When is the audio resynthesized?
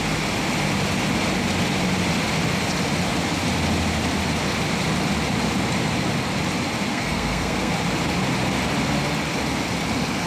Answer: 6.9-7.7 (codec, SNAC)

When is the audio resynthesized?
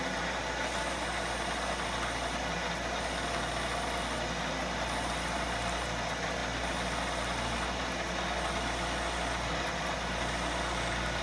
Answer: none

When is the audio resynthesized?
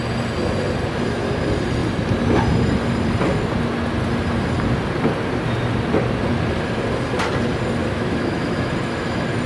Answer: 7.8-8.7 (autoencoder, DAC-VAE)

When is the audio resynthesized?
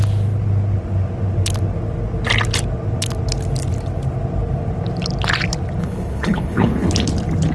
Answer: 5.8-6.9 (codec, HILCodec)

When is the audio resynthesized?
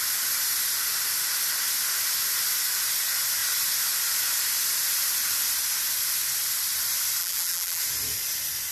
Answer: 7.2-7.8 (vocoder, BigVGAN v2)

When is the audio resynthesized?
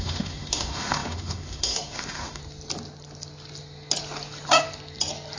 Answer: 0.0-2.4 (autoencoder, DAC-VAE)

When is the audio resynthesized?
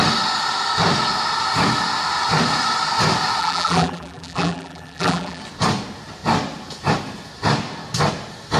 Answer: 3.4-5.4 (vocoder, BigVGAN v2)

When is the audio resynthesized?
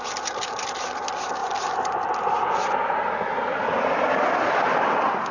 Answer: none